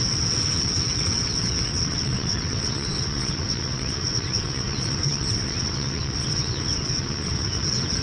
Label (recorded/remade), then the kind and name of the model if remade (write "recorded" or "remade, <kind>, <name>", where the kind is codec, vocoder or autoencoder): remade, vocoder, WaveNeXt